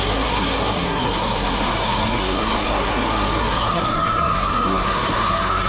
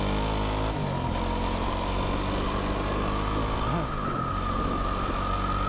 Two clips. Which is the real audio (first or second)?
second